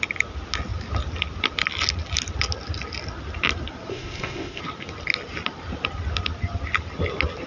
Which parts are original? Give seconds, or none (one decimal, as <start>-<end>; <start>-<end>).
0.0-3.9; 4.6-7.5